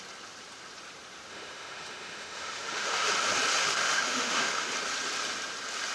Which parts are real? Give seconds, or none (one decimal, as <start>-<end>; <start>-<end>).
0.0-1.3; 3.1-3.6; 4.7-5.9